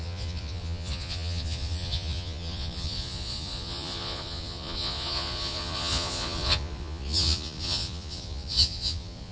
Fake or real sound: fake